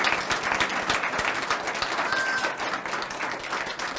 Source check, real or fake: real